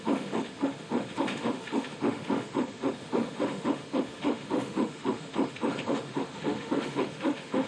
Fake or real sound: fake